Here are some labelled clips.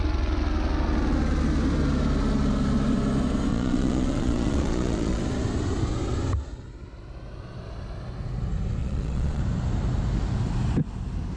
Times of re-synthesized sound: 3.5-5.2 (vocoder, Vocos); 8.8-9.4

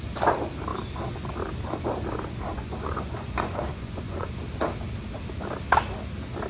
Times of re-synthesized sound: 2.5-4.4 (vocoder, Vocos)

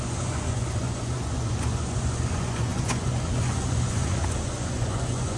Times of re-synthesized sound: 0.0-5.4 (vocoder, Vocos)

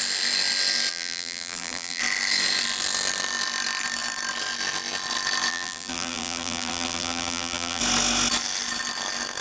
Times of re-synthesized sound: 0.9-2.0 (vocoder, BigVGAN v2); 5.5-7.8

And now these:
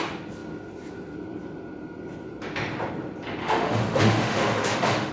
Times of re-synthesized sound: 3.4-5.1 (autoencoder, DAC-VAE)

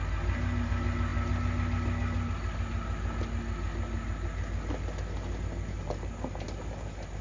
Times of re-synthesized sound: none